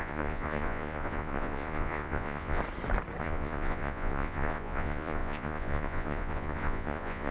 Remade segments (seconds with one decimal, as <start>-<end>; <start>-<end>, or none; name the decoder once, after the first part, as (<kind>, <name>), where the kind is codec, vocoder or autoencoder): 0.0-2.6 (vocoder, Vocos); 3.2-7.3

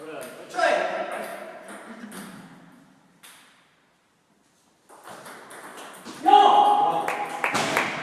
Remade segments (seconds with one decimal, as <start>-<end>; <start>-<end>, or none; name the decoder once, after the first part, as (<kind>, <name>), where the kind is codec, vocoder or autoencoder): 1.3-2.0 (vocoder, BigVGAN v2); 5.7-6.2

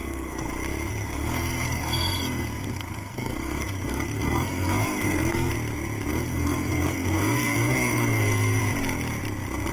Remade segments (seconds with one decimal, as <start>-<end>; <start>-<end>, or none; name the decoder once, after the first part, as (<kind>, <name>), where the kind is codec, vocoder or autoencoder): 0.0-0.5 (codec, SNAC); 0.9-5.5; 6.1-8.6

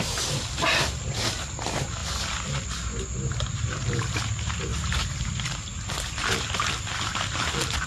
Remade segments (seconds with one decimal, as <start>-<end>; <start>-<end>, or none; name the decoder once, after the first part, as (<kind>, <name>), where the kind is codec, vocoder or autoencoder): none

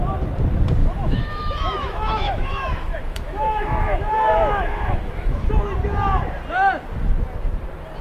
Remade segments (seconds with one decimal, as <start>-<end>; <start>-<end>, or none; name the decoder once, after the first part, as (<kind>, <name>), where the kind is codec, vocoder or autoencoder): 0.8-5.5 (autoencoder, DAC-VAE)

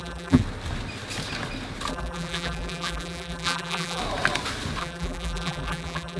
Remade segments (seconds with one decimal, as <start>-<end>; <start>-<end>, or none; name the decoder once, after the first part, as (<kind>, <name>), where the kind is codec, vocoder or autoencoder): 0.0-0.4 (vocoder, BigVGAN v2); 1.9-4.0; 4.8-6.2